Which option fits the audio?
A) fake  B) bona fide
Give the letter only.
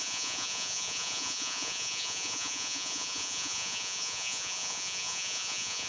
A